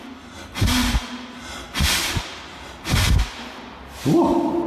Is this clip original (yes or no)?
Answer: yes